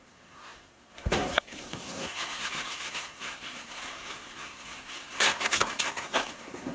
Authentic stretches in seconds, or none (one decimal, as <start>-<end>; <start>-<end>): none

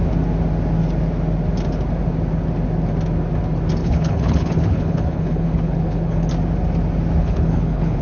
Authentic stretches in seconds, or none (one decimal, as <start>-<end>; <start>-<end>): 0.0-3.8; 6.3-7.2

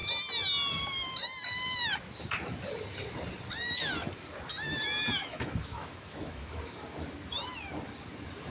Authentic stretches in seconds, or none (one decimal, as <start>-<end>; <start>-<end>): 0.0-5.2; 6.6-8.5